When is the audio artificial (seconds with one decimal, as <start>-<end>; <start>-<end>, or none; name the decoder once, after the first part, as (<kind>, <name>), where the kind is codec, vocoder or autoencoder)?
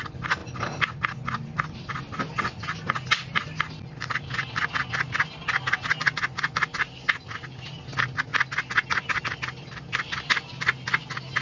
none